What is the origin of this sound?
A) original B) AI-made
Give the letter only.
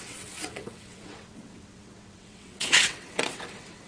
B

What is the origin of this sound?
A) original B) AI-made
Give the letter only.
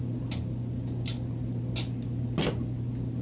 A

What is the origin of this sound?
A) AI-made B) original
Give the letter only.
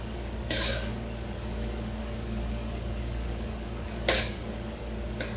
A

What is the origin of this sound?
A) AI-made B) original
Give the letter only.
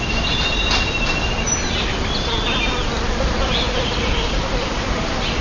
B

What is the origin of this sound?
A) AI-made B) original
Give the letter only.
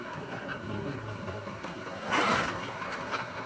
A